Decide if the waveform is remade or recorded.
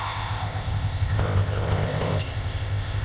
remade